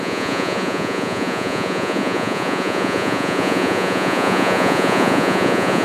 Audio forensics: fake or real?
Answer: fake